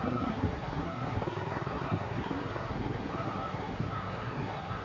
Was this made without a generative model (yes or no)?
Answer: no